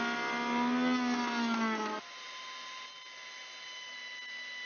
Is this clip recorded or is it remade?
recorded